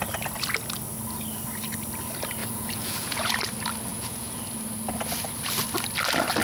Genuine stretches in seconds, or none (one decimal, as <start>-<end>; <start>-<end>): 0.0-2.4; 3.3-3.9; 4.4-6.4